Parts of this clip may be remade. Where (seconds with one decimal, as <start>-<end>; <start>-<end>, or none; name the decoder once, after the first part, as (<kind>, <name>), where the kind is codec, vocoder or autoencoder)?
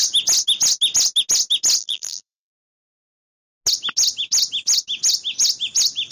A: 1.8-2.7 (vocoder, BigVGAN v2)